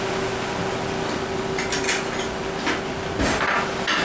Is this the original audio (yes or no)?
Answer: yes